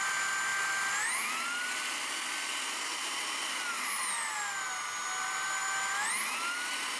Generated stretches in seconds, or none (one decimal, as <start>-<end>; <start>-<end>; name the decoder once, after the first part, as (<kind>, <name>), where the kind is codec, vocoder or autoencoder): none